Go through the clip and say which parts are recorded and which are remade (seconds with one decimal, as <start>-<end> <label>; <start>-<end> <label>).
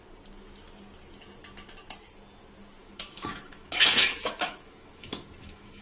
0.0-2.8 recorded; 2.8-5.8 remade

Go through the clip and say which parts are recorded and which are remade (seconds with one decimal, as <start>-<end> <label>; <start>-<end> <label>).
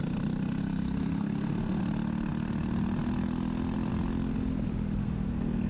0.0-0.6 recorded; 0.6-1.8 remade; 1.8-5.0 recorded; 5.0-5.7 remade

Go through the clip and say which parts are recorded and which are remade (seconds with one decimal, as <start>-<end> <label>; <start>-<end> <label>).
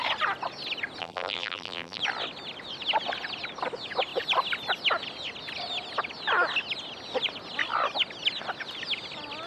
0.0-1.0 recorded; 1.0-2.0 remade; 2.0-9.5 recorded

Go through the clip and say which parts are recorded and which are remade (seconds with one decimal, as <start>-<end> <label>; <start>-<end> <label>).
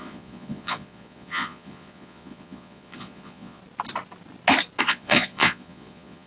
0.0-3.6 remade; 3.6-4.8 recorded; 4.8-6.3 remade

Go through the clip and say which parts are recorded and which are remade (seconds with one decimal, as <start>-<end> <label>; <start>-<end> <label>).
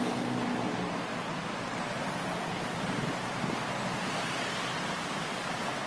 0.0-5.9 recorded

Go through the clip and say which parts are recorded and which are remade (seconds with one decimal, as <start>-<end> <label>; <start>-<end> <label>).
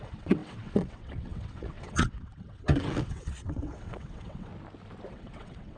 0.0-4.5 remade; 4.5-5.1 recorded; 5.1-5.8 remade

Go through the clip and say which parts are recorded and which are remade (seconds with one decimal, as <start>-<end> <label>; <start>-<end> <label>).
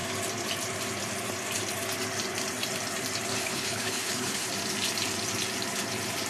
0.0-3.3 recorded; 3.3-4.5 remade; 4.5-6.3 recorded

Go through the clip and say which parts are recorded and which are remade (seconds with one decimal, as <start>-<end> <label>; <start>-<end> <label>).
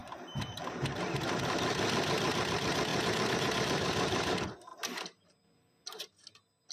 0.0-1.4 remade; 1.4-2.9 recorded; 2.9-4.3 remade; 4.3-4.7 recorded; 4.7-6.3 remade; 6.3-6.7 recorded